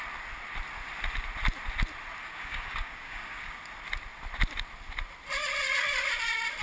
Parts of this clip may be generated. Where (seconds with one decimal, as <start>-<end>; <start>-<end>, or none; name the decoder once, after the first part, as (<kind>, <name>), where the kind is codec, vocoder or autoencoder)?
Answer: 2.2-3.6 (codec, DAC)